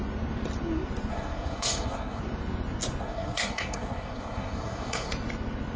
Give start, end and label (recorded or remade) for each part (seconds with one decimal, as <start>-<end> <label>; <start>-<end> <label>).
0.0-1.1 recorded; 1.1-2.2 remade; 2.2-3.0 recorded; 3.0-5.1 remade; 5.1-5.8 recorded